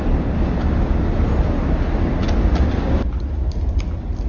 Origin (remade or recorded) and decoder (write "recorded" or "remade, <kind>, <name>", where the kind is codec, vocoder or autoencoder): recorded